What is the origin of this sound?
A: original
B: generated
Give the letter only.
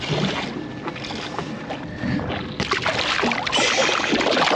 A